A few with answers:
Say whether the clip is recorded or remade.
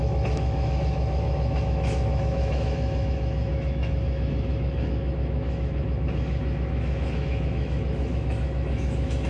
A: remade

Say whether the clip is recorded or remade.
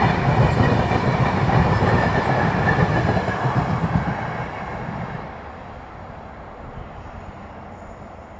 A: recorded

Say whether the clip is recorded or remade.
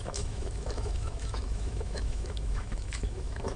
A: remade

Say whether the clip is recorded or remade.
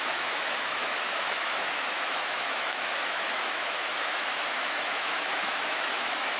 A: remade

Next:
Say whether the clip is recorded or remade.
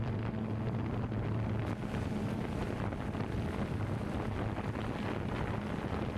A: recorded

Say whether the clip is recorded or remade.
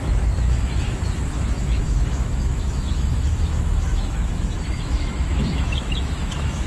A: remade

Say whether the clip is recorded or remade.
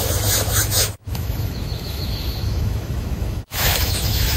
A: remade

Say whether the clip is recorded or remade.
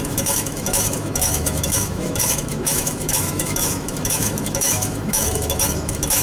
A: remade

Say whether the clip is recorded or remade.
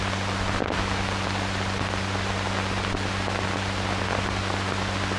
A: recorded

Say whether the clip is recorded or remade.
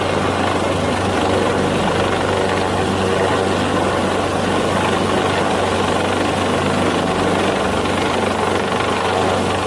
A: recorded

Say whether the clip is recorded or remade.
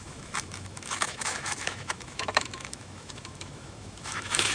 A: remade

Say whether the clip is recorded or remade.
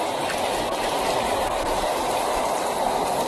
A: recorded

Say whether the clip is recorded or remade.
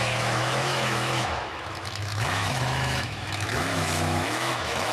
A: remade